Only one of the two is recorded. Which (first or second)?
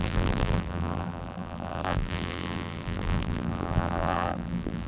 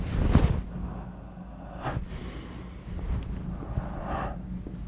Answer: second